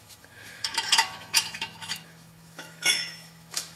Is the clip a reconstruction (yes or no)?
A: yes